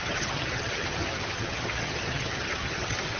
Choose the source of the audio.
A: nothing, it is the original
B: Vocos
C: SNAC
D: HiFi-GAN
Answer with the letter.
D